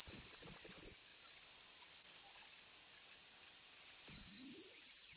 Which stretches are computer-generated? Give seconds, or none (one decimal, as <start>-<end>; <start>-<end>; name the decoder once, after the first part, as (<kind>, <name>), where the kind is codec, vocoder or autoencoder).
0.0-0.7 (vocoder, BigVGAN v2); 1.1-2.2